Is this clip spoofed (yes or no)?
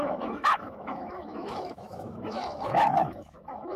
yes